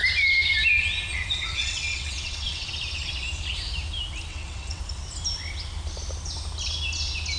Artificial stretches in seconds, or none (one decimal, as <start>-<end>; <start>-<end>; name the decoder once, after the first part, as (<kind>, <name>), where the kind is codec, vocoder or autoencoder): 1.6-2.7 (vocoder, WaveNeXt); 4.3-4.8